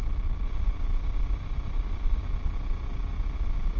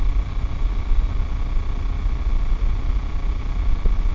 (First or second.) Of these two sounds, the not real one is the first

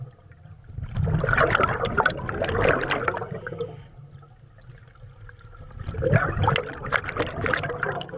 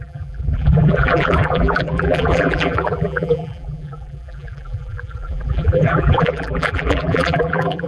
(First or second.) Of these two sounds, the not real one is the second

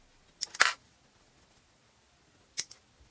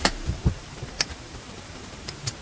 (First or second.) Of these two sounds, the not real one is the second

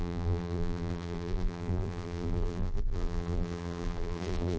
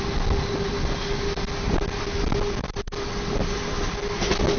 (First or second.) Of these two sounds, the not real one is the first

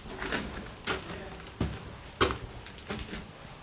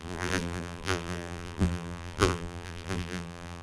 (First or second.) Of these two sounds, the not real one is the second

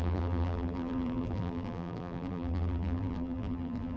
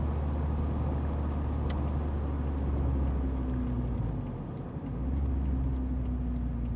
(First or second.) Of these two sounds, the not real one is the first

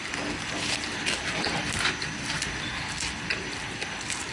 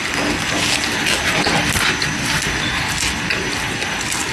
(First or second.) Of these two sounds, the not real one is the first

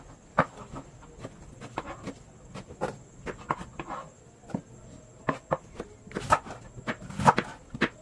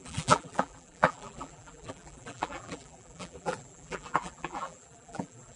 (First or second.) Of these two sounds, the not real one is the second